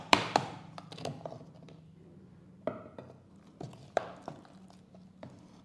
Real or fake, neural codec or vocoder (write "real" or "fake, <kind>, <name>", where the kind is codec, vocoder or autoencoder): fake, vocoder, BigVGAN v2